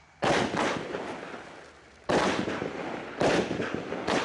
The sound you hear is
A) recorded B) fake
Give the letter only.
A